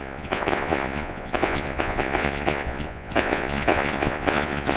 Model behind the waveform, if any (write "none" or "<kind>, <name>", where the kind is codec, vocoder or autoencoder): vocoder, Vocos